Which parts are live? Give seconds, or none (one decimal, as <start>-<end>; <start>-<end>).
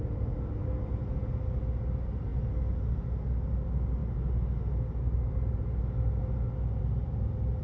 0.0-7.6